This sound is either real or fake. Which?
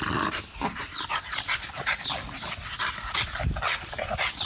fake